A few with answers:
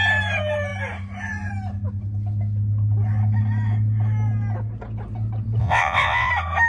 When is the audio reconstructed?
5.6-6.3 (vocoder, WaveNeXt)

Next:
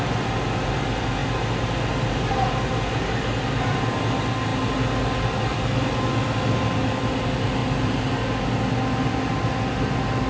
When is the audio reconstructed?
none

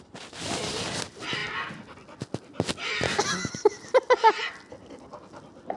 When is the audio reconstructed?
none

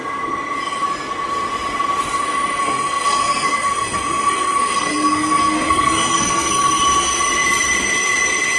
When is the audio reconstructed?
2.6-6.8 (codec, SNAC)

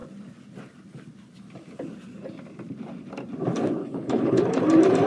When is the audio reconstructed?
3.8-4.4 (codec, HILCodec)